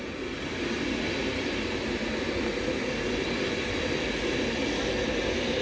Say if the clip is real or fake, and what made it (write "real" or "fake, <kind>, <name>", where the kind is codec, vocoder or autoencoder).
real